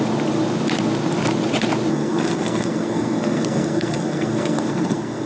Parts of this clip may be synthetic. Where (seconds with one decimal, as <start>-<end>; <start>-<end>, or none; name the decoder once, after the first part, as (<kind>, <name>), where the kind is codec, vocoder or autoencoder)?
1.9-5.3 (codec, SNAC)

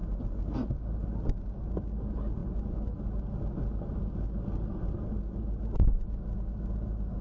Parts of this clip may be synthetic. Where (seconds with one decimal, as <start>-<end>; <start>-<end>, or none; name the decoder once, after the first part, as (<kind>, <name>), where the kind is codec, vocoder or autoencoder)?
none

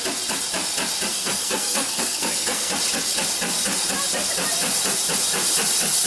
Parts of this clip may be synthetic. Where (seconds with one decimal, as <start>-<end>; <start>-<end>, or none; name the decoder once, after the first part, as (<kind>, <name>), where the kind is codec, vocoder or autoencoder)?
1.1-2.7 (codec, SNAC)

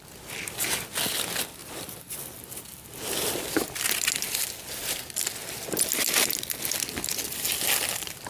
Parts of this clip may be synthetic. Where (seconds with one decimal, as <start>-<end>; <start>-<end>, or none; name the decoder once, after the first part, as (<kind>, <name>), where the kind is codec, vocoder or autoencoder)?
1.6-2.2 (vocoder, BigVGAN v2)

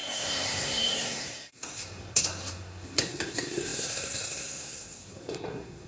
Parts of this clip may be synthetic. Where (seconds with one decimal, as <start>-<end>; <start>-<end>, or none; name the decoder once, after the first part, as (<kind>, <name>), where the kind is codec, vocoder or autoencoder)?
0.0-5.9 (codec, SNAC)